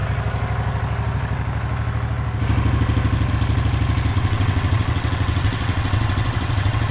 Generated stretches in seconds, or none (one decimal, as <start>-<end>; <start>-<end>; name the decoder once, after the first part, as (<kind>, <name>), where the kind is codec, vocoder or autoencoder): 4.1-6.9 (vocoder, WaveNeXt)